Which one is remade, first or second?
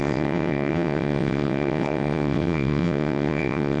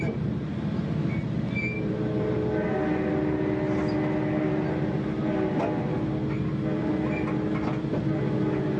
first